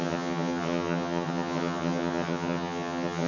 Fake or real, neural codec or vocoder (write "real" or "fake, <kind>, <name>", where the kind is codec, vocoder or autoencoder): fake, vocoder, HiFi-GAN